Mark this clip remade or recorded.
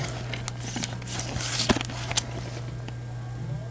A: recorded